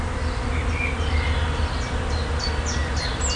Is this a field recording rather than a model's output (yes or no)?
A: yes